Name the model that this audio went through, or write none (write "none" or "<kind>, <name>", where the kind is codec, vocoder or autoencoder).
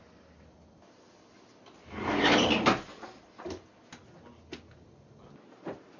none